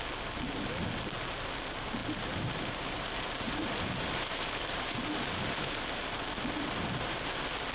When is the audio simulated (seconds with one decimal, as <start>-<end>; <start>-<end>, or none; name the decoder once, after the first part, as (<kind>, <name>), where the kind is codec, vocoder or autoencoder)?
2.0-6.2 (vocoder, BigVGAN v2)